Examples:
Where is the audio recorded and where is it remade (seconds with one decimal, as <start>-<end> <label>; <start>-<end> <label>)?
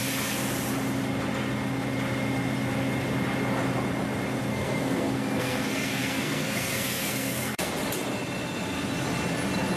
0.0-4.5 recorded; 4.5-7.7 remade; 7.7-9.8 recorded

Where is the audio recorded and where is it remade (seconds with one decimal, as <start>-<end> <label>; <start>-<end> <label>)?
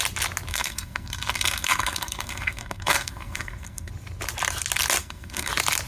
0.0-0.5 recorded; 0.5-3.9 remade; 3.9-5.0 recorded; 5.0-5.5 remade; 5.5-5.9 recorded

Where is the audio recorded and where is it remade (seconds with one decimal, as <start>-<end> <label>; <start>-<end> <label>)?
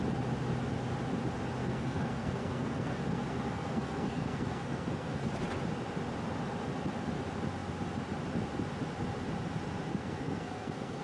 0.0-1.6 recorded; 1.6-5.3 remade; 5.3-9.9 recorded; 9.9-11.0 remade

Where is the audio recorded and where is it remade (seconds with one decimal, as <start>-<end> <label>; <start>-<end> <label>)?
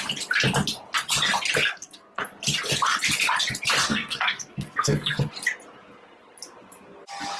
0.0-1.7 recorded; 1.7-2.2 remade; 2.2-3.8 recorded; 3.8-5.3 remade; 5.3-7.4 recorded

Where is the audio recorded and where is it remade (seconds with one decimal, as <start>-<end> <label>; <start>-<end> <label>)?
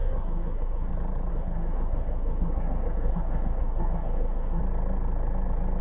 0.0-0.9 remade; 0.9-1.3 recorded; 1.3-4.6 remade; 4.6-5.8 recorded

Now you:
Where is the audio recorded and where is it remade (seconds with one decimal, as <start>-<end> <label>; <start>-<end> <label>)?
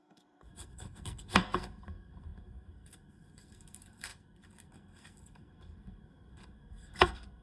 0.0-7.4 remade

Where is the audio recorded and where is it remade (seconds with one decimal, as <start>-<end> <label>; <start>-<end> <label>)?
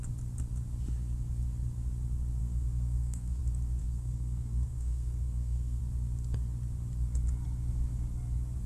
0.0-2.4 recorded; 2.4-3.4 remade; 3.4-3.8 recorded; 3.8-5.8 remade; 5.8-8.7 recorded